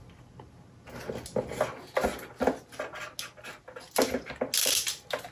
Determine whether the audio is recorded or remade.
recorded